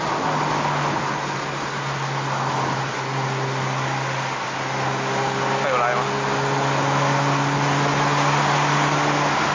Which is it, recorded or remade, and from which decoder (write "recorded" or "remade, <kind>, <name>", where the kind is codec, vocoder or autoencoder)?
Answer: recorded